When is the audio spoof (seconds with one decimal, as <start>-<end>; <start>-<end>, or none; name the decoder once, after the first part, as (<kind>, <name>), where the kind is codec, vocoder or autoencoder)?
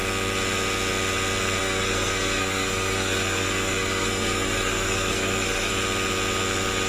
1.6-5.7 (codec, SNAC)